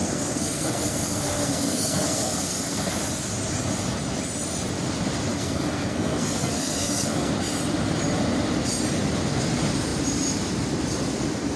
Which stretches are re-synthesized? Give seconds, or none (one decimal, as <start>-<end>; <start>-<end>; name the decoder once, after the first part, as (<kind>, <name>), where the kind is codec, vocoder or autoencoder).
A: 0.0-2.9 (codec, SNAC); 5.3-7.3